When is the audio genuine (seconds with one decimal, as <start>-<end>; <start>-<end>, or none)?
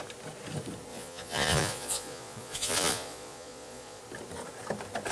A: 0.0-0.9; 4.0-5.1